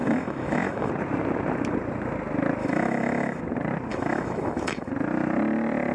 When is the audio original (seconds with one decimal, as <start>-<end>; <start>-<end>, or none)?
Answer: 0.9-2.6; 3.4-3.9; 4.9-5.9